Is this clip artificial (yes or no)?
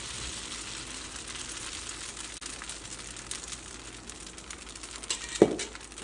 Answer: no